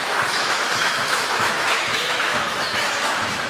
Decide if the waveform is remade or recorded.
remade